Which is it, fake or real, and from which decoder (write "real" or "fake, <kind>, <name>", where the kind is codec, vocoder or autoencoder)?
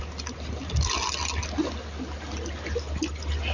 real